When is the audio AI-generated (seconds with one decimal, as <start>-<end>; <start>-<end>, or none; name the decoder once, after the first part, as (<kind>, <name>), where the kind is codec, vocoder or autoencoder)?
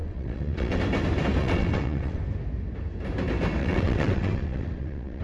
0.0-0.8 (vocoder, WaveNeXt); 1.4-2.2; 3.6-5.2